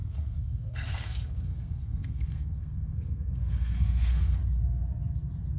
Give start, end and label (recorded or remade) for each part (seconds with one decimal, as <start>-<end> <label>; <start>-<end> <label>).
0.0-4.4 remade; 4.4-5.6 recorded